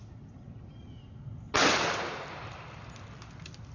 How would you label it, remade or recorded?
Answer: recorded